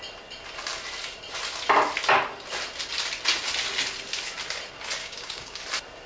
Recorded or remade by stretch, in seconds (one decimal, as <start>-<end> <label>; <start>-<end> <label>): 0.0-5.0 recorded; 5.0-5.6 remade; 5.6-6.1 recorded